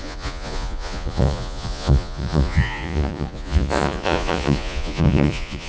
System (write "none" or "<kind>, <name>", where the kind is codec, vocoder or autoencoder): vocoder, Vocos